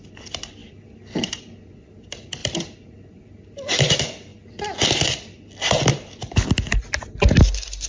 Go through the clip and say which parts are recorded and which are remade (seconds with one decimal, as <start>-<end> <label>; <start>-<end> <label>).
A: 0.0-0.6 recorded; 0.6-1.2 remade; 1.2-7.9 recorded

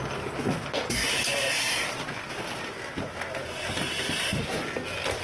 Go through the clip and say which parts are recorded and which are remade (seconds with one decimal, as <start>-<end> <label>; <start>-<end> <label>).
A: 0.0-5.2 recorded

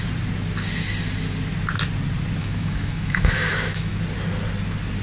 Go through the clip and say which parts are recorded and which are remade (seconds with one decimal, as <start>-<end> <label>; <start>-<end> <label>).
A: 0.0-2.4 recorded; 2.4-4.0 remade; 4.0-5.0 recorded

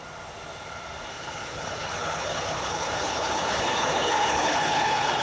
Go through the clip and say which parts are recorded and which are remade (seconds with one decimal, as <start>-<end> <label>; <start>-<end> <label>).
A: 0.0-1.1 recorded; 1.1-5.2 remade

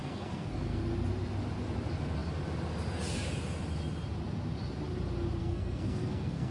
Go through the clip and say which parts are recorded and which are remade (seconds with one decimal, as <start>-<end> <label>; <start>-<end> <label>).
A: 0.0-0.8 remade; 0.8-5.4 recorded; 5.4-6.5 remade

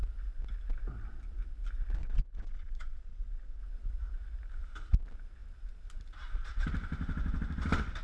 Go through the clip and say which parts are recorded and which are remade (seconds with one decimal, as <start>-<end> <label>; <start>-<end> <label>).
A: 0.0-2.0 recorded; 2.0-3.6 remade; 3.6-8.0 recorded

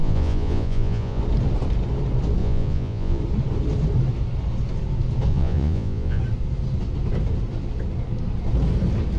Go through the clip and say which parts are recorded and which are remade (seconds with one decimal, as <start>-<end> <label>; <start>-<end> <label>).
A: 0.0-1.2 remade; 1.2-2.4 recorded; 2.4-3.2 remade; 3.2-5.3 recorded; 5.3-6.2 remade; 6.2-9.2 recorded

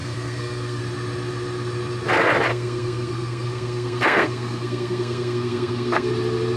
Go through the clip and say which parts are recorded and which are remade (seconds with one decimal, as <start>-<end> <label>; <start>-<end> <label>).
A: 0.0-0.8 remade; 0.8-2.5 recorded; 2.5-6.1 remade; 6.1-6.6 recorded